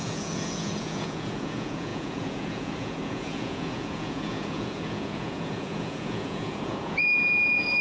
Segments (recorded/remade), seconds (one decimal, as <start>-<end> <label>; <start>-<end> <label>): 0.0-7.8 remade